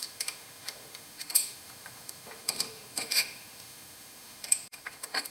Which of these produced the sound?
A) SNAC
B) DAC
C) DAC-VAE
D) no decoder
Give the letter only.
C